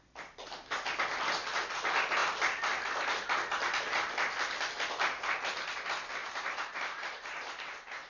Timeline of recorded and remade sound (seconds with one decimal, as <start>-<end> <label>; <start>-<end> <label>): 0.0-6.2 recorded; 6.2-8.1 remade